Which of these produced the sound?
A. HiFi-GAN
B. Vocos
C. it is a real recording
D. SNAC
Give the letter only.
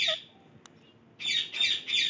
C